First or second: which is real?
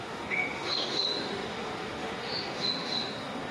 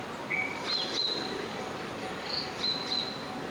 second